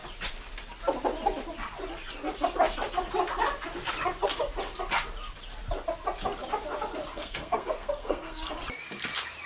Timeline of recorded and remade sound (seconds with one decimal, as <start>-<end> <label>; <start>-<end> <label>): 0.0-7.1 recorded; 7.1-8.5 remade; 8.5-9.5 recorded